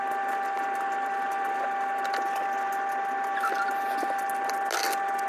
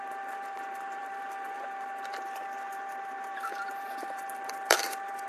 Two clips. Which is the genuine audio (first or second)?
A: first